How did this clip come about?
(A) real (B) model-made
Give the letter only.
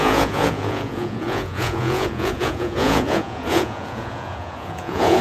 B